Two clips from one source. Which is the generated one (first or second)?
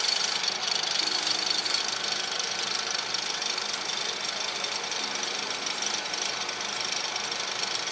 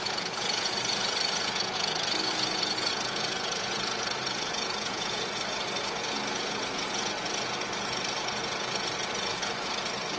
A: second